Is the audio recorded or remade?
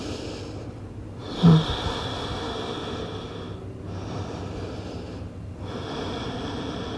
recorded